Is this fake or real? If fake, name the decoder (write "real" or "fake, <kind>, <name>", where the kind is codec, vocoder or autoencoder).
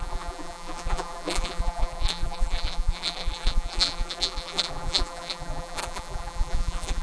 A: fake, vocoder, BigVGAN v2